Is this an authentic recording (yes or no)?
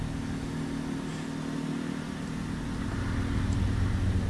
yes